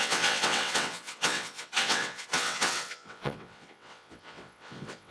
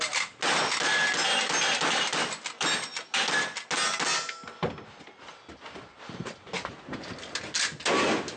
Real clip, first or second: second